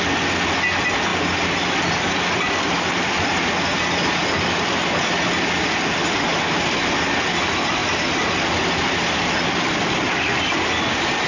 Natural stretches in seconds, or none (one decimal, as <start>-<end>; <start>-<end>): 0.0-11.3